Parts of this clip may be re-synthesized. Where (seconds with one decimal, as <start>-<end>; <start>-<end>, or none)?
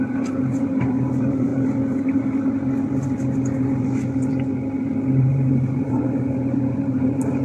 0.0-1.5; 5.2-7.4